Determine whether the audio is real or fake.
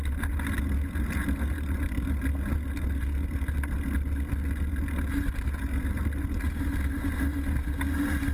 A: real